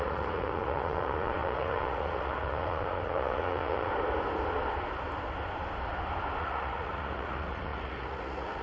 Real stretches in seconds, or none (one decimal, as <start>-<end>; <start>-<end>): 3.9-6.4